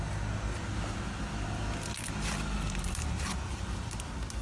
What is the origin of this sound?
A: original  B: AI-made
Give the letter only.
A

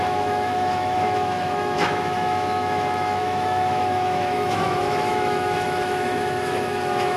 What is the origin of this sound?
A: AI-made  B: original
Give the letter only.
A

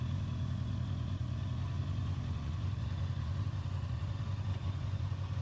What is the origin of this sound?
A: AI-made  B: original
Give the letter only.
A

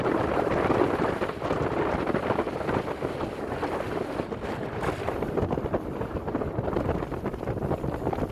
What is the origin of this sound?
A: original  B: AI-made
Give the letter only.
B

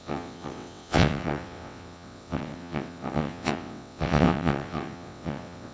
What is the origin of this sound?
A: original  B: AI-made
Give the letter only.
B